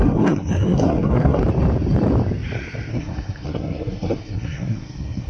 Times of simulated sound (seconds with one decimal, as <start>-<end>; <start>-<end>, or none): 0.0-1.4; 2.9-5.3